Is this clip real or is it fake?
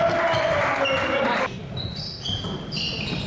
real